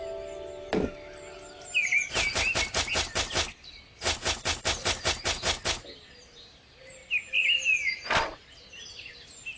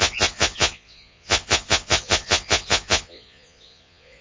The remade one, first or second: second